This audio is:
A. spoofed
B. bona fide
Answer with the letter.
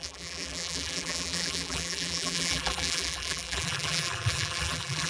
A